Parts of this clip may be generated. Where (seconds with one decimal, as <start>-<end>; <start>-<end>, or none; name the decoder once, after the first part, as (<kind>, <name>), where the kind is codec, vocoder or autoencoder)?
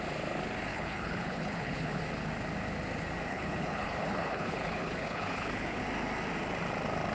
0.7-2.0 (codec, HILCodec); 3.3-5.8